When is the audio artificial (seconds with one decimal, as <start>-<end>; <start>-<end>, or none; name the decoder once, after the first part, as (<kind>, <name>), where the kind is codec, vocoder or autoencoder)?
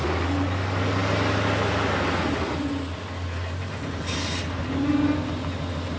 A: none